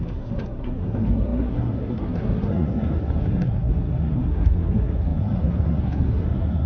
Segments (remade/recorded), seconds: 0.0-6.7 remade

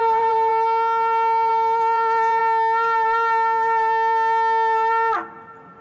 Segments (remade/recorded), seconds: 0.0-0.5 remade; 0.5-1.5 recorded; 1.5-2.4 remade; 2.4-5.8 recorded